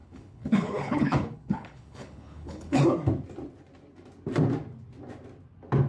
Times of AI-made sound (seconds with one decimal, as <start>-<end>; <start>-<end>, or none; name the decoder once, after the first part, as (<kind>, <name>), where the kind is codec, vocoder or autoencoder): 0.0-2.8 (codec, HILCodec)